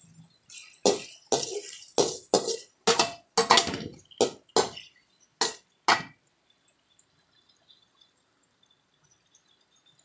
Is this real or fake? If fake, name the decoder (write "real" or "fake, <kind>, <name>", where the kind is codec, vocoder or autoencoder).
real